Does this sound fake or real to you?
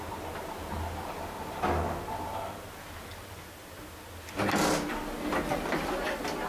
real